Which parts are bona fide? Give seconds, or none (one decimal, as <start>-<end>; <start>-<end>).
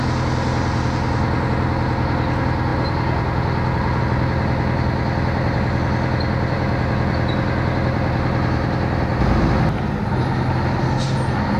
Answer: 0.0-11.6